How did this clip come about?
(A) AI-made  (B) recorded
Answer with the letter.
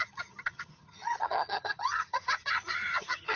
A